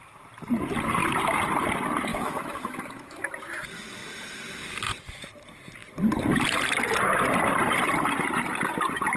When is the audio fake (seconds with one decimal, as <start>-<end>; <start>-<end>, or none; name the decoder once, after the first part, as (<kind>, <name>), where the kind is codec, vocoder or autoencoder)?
2.1-3.3 (autoencoder, DAC-VAE)